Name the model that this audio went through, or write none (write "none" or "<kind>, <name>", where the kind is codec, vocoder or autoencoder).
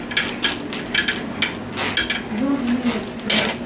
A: none